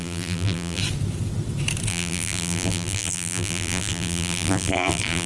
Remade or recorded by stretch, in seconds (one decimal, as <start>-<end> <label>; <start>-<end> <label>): 0.0-0.8 remade; 0.8-1.9 recorded; 1.9-5.3 remade